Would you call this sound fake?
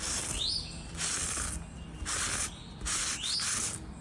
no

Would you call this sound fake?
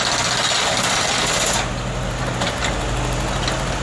no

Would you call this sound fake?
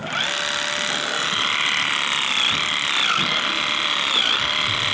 no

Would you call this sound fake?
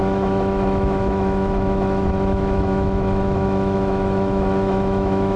yes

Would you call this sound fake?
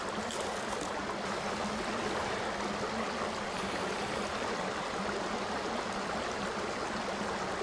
no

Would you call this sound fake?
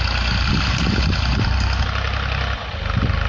no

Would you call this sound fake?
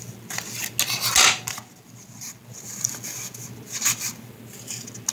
no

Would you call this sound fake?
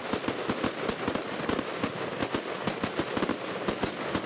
no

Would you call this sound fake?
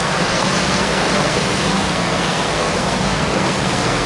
yes